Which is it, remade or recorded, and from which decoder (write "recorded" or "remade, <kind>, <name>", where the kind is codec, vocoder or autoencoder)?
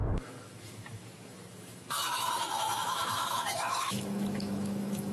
remade, autoencoder, DAC-VAE